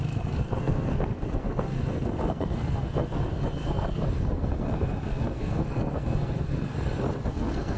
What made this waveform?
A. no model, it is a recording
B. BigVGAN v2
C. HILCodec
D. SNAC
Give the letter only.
D